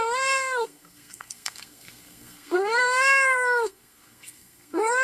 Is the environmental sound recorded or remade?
remade